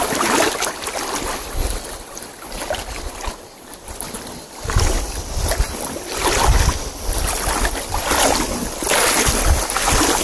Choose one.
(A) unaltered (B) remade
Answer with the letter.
A